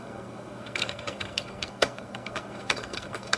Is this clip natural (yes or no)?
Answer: no